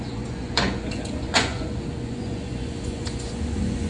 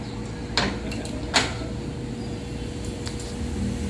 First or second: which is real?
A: second